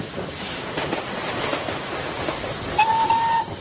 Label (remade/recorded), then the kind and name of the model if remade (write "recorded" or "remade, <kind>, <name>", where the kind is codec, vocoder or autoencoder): recorded